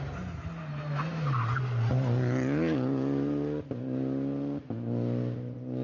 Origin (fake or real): real